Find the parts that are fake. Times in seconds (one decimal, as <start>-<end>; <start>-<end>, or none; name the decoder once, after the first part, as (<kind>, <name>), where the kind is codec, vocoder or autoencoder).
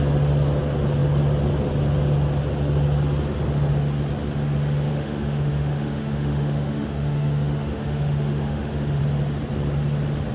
4.9-9.0 (autoencoder, DAC-VAE)